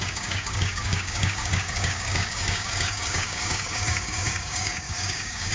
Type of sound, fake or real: fake